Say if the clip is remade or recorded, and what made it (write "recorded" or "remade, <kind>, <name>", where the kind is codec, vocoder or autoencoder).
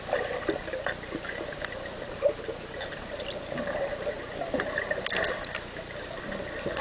recorded